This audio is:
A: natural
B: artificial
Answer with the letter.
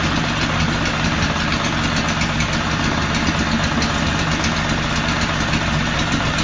A